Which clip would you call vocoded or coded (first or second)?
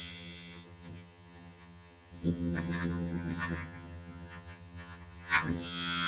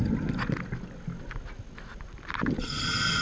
first